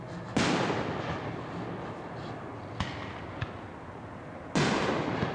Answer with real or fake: real